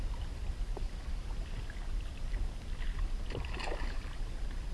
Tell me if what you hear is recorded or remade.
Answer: recorded